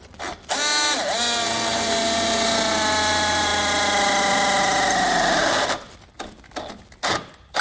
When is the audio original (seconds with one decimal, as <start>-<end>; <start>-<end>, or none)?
0.0-7.6